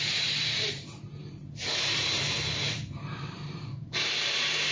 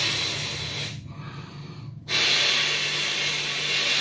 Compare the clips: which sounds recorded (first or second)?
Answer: second